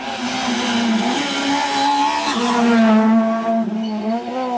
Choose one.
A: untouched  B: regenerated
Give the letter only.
A